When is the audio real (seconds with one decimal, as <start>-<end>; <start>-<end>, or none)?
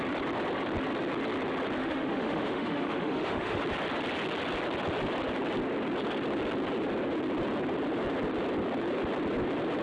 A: 0.0-1.8; 3.6-9.8